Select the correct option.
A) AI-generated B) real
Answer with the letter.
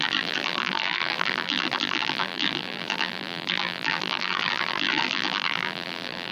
A